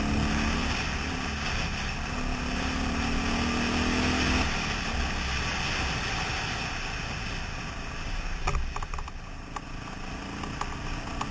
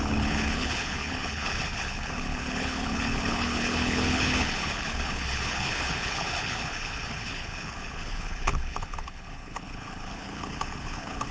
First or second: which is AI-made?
second